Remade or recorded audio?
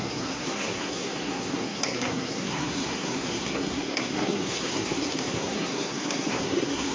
remade